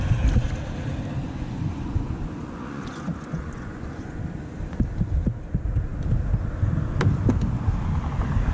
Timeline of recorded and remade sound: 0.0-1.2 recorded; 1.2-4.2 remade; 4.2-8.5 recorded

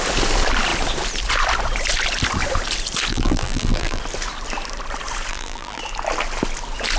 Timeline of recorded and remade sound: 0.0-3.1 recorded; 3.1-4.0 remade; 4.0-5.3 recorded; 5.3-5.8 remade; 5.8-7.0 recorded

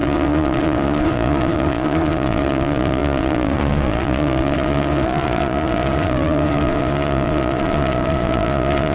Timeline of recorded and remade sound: 0.0-8.9 remade

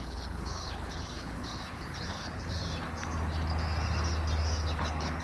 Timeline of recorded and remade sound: 0.0-2.6 remade; 2.6-4.8 recorded; 4.8-5.2 remade

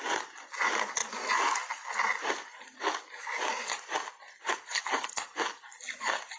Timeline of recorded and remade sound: 0.0-6.4 recorded

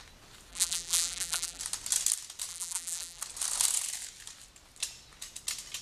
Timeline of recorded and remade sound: 0.0-0.5 recorded; 0.5-1.6 remade; 1.6-2.5 recorded; 2.5-3.2 remade; 3.2-5.8 recorded

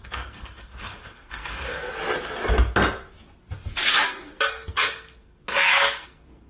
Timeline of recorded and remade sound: 0.0-1.9 remade; 1.9-3.9 recorded; 3.9-6.5 remade